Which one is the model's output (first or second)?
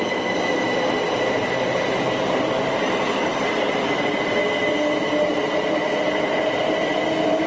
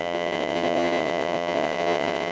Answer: second